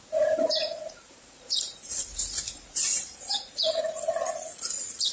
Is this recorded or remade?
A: remade